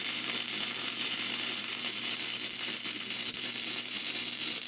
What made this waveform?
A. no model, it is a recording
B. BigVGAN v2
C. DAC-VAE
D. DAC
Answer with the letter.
A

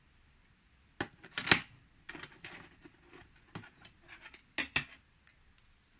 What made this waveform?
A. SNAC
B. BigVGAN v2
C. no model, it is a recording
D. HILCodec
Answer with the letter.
C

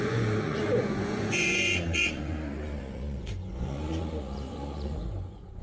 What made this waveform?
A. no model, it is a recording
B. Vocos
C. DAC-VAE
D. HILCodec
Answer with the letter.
B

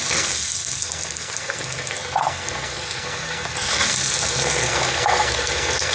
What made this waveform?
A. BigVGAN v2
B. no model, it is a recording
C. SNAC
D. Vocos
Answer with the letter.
C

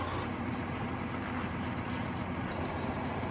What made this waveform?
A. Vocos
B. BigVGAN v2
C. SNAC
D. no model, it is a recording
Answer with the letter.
D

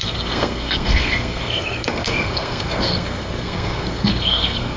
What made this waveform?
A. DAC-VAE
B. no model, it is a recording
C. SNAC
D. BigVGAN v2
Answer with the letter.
C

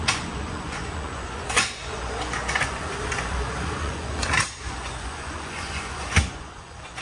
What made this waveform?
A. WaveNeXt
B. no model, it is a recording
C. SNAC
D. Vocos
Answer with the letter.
D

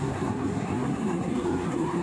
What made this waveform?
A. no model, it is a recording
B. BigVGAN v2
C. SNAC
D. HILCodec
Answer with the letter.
C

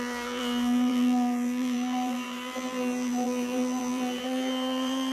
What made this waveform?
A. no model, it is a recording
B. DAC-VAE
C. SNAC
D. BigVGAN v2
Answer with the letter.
D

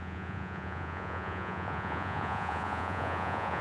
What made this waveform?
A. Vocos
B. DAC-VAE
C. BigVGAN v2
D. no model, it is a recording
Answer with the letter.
A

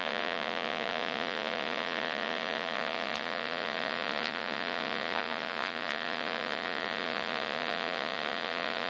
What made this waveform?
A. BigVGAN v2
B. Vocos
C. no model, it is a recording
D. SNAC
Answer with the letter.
B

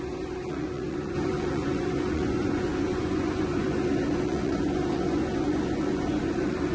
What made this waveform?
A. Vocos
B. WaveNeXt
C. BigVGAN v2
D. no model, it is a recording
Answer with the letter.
A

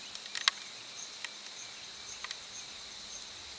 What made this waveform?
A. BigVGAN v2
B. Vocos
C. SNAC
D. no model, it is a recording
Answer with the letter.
D